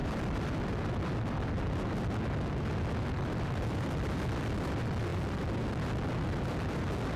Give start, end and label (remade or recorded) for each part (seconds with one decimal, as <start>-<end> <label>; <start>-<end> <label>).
0.0-7.2 remade